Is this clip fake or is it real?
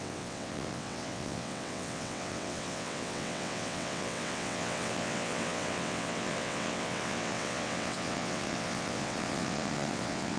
fake